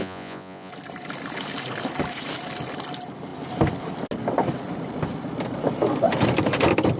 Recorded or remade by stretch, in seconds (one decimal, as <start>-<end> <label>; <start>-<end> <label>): 0.0-0.7 remade; 0.7-7.0 recorded